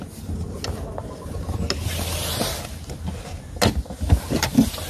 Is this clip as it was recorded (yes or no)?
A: yes